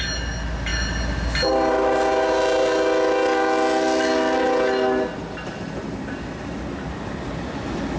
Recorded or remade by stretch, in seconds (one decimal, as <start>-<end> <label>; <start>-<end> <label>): 0.0-8.0 recorded